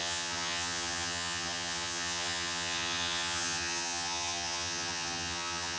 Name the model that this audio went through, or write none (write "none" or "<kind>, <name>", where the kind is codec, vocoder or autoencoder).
vocoder, HiFi-GAN